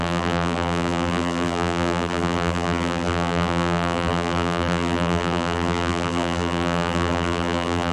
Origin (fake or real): fake